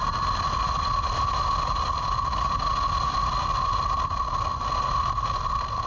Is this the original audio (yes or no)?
yes